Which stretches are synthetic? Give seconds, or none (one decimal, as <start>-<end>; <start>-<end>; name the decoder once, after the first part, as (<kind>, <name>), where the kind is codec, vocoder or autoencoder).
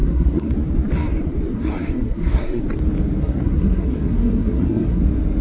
0.0-0.5 (codec, SNAC); 1.5-2.6; 3.2-5.0